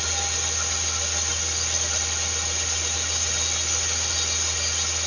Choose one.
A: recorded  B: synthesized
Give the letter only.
A